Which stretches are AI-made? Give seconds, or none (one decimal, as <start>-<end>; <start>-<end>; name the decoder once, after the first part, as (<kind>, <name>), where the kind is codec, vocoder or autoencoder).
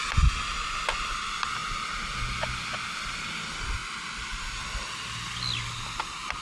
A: none